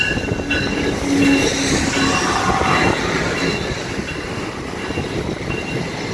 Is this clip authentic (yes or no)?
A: yes